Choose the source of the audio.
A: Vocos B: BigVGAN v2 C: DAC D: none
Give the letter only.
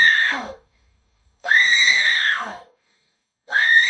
C